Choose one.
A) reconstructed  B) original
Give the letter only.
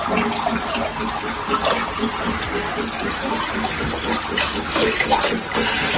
B